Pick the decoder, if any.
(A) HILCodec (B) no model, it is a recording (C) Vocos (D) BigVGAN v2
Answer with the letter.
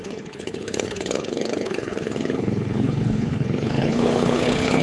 A